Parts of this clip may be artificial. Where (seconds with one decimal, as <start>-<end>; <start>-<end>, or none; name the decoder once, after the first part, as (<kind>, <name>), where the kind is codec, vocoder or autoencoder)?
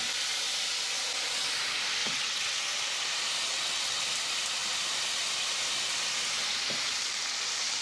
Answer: 2.0-2.6 (vocoder, WaveNeXt); 3.5-4.0